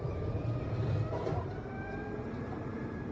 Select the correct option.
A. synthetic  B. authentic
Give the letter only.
A